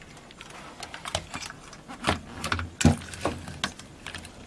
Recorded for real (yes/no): yes